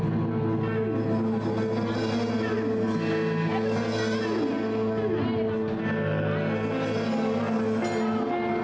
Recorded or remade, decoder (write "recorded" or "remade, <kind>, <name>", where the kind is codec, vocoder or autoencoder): recorded